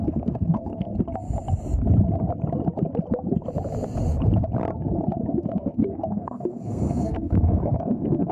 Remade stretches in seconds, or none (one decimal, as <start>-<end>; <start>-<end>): 0.0-0.9; 5.3-8.3